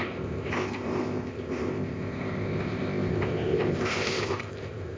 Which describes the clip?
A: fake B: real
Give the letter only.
A